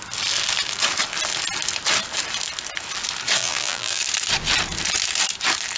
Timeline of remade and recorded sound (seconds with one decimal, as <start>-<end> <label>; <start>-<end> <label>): 0.0-3.4 recorded; 3.4-4.0 remade; 4.0-5.8 recorded